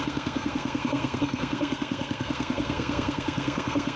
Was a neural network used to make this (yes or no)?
yes